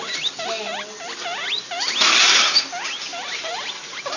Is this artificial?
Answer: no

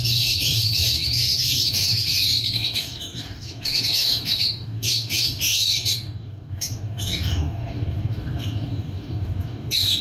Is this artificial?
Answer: yes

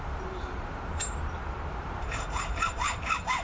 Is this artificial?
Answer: yes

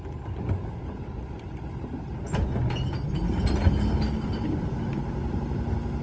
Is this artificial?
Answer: no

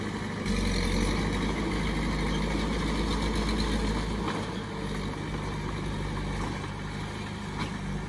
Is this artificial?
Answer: no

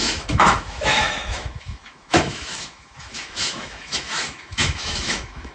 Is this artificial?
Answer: yes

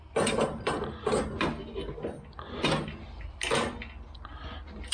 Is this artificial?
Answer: no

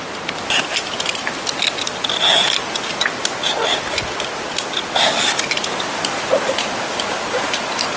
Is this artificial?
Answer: no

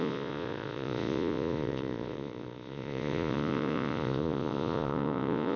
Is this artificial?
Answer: yes